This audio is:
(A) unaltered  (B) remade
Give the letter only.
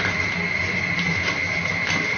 A